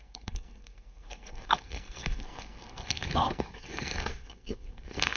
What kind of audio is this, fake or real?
fake